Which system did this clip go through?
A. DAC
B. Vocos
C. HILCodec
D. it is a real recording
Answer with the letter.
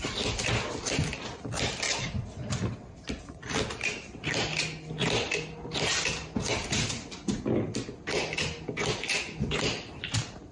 D